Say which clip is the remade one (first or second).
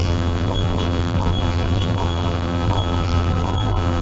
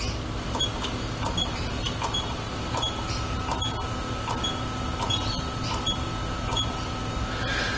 first